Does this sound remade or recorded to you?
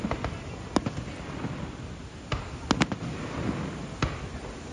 recorded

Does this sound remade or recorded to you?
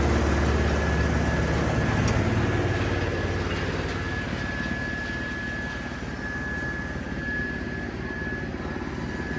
recorded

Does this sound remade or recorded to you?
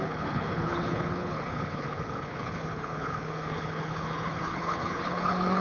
remade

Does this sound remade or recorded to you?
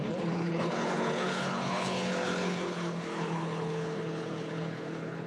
remade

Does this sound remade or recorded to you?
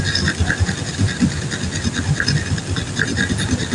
recorded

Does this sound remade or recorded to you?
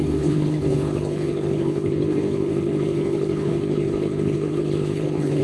remade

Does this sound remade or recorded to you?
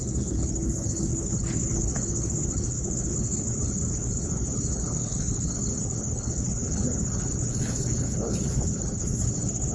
remade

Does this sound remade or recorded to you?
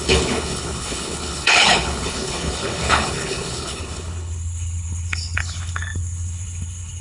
remade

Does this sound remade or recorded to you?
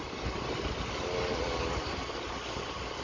recorded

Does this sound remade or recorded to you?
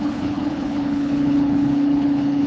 remade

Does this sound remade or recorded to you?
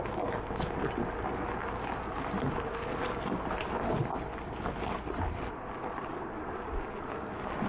recorded